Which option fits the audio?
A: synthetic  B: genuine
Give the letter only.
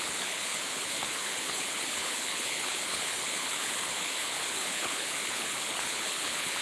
A